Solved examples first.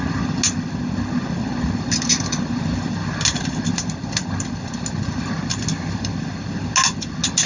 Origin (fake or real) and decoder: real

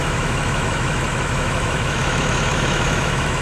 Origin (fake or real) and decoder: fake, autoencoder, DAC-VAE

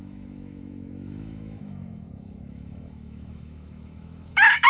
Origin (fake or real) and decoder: fake, autoencoder, DAC-VAE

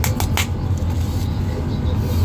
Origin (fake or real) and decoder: real